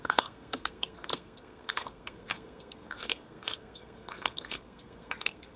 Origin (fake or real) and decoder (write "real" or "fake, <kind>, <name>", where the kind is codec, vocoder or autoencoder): fake, codec, SNAC